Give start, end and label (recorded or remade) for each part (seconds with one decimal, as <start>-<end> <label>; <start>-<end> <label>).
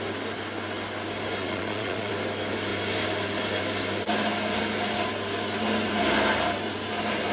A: 0.0-1.4 recorded; 1.4-2.1 remade; 2.1-7.3 recorded